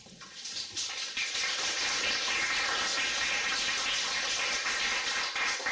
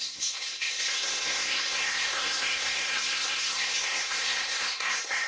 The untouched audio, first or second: first